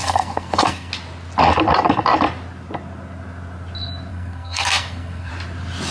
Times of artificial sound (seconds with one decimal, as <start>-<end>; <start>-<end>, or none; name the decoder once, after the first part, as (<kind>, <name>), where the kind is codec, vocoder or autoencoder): 0.0-0.9 (codec, SNAC); 4.1-5.3

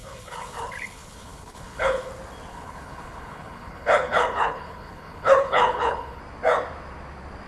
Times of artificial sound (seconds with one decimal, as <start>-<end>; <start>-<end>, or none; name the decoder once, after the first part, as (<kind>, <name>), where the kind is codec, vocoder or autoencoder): 0.0-2.1 (codec, HILCodec); 2.5-6.2

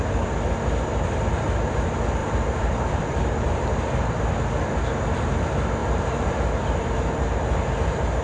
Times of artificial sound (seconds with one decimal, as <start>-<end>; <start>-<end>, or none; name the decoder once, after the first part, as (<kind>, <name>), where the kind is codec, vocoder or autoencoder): 2.2-3.7 (vocoder, BigVGAN v2); 5.8-6.4

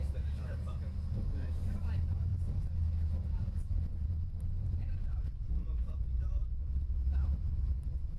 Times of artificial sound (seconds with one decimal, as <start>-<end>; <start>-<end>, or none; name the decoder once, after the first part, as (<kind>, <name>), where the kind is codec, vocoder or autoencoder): 0.0-8.2 (vocoder, BigVGAN v2)